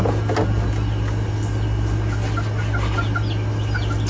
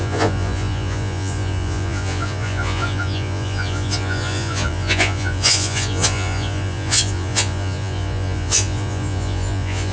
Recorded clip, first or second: first